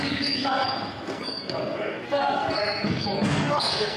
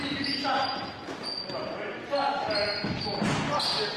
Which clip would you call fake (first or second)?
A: first